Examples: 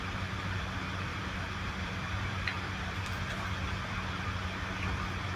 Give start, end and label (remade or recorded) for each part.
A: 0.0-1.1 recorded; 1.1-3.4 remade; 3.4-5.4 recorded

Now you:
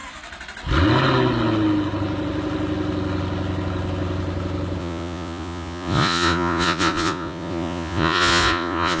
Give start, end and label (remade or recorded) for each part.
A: 0.0-4.8 recorded; 4.8-9.0 remade

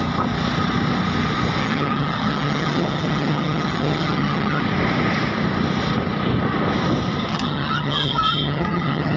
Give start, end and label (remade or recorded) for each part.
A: 0.0-1.6 recorded; 1.6-4.6 remade; 4.6-7.3 recorded; 7.3-9.2 remade

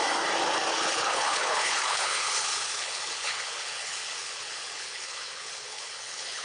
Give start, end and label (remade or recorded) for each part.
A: 0.0-0.7 recorded; 0.7-6.4 remade

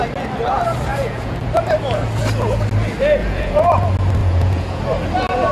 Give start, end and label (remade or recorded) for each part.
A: 0.0-0.9 recorded; 0.9-1.4 remade; 1.4-3.2 recorded; 3.2-3.7 remade; 3.7-4.2 recorded; 4.2-4.8 remade; 4.8-5.5 recorded

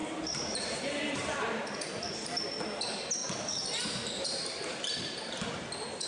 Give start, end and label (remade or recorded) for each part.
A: 0.0-1.6 remade; 1.6-3.2 recorded; 3.2-5.5 remade; 5.5-6.1 recorded